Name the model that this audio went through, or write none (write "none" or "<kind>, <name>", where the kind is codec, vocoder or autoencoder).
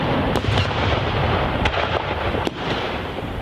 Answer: vocoder, BigVGAN v2